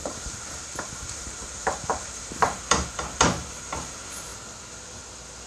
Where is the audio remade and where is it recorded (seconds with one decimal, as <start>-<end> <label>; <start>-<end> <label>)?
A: 0.0-4.3 remade; 4.3-5.5 recorded